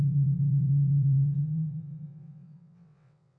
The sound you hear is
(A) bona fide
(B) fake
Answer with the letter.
B